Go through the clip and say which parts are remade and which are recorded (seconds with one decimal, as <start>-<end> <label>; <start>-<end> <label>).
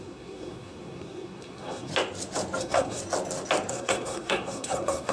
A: 0.0-1.9 remade; 1.9-2.6 recorded; 2.6-3.0 remade; 3.0-3.7 recorded; 3.7-5.1 remade